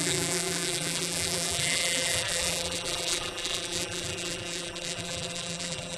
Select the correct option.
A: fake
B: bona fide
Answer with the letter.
A